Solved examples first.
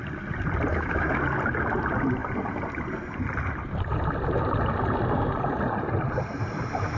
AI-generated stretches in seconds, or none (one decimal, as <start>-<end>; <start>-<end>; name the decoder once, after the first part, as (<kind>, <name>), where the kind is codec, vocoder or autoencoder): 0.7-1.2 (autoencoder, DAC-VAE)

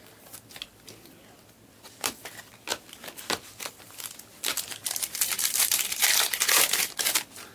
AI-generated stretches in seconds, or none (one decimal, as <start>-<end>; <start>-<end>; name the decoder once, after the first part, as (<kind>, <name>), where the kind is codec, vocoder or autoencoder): 4.8-7.5 (vocoder, BigVGAN v2)

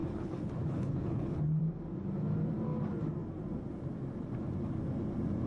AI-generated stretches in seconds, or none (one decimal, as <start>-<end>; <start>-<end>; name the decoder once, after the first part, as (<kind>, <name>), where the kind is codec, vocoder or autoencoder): 0.0-1.6 (codec, HILCodec)

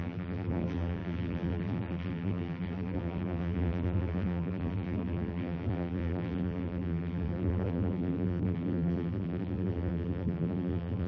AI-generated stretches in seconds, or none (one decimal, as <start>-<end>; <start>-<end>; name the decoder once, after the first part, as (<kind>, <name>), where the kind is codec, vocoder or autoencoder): 0.0-11.1 (vocoder, BigVGAN v2)

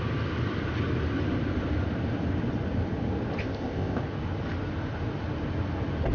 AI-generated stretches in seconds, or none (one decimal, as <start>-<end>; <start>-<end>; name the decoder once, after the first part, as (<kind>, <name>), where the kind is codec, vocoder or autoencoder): 3.4-4.0 (codec, ZipCodec)

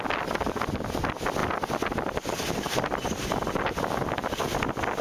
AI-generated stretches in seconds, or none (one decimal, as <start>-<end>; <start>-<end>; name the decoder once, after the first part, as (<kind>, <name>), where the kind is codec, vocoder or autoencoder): none